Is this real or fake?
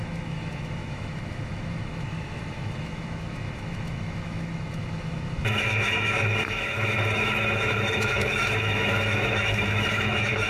fake